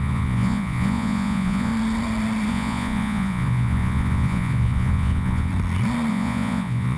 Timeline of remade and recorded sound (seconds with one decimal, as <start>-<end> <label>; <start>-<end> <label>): 0.0-1.7 remade; 1.7-2.5 recorded; 2.5-5.5 remade; 5.5-6.1 recorded; 6.1-7.0 remade